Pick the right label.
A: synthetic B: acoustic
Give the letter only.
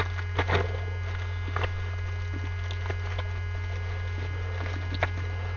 B